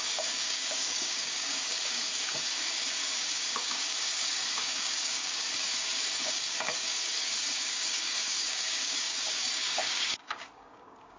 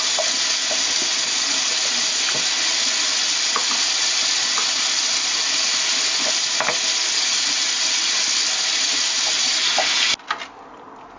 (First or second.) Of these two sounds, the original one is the second